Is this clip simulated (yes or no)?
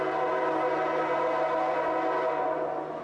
no